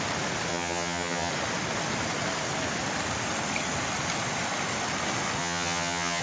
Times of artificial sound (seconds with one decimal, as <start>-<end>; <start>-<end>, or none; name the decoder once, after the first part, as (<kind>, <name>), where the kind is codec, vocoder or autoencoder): 0.5-1.3 (vocoder, HiFi-GAN); 5.4-6.2